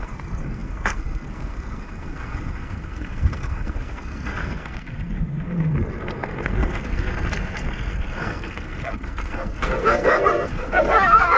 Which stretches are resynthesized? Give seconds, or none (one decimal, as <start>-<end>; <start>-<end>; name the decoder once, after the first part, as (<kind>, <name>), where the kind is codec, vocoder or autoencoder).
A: 0.0-11.4 (codec, SNAC)